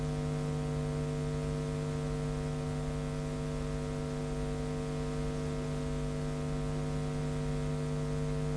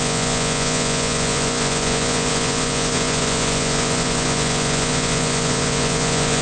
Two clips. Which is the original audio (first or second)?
first